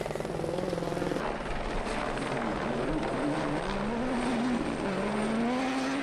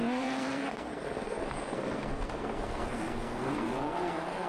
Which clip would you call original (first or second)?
first